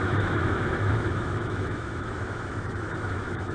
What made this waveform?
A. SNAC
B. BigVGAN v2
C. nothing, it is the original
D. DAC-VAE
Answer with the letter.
D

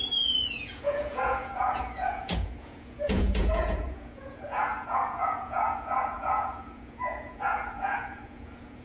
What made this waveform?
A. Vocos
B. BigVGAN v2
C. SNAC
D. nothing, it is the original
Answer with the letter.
A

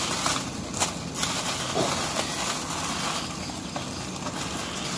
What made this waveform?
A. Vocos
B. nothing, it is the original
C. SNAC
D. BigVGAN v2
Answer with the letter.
B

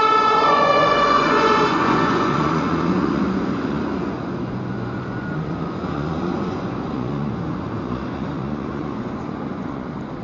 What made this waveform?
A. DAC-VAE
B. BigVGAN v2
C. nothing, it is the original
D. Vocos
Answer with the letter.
D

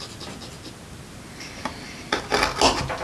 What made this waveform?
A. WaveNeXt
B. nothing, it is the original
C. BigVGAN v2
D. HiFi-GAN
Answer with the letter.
B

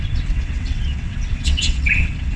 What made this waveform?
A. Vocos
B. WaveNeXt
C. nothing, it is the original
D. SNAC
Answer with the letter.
B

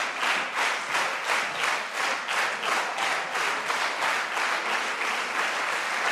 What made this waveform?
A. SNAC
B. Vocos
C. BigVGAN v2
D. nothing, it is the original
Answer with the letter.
D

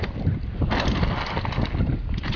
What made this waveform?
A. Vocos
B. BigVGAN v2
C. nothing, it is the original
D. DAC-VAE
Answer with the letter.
C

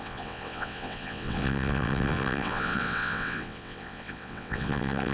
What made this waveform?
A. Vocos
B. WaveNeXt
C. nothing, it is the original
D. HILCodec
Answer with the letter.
B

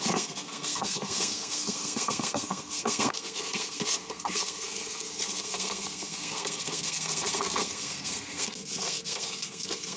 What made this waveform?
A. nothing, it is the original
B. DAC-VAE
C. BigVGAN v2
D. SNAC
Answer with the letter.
D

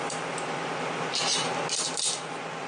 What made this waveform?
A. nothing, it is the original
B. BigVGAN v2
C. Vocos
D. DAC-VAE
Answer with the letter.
A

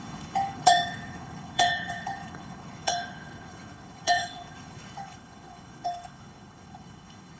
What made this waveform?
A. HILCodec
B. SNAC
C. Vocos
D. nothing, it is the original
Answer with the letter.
A